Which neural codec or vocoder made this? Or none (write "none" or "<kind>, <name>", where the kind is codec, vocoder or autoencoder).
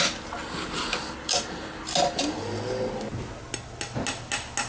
none